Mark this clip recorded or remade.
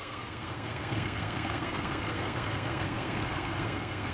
remade